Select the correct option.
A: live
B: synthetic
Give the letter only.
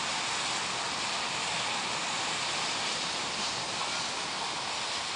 A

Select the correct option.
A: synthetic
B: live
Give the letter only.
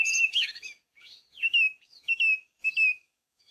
A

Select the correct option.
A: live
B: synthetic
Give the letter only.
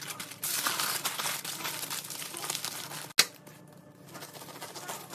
A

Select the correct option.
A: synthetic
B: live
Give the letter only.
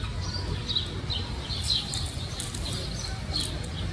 B